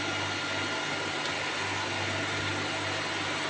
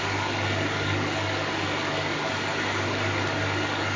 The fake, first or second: second